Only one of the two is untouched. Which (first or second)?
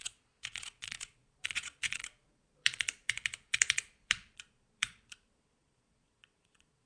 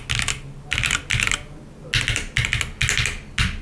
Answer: second